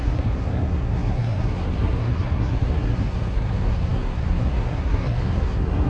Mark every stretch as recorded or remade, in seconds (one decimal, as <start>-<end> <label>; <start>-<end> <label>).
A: 0.0-5.9 remade